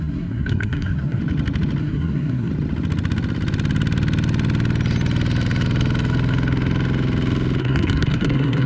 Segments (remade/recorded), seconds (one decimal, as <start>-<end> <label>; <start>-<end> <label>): 0.0-1.2 remade; 1.2-1.8 recorded; 1.8-2.5 remade; 2.5-7.6 recorded; 7.6-8.7 remade